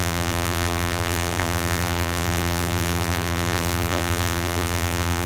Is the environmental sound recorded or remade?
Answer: remade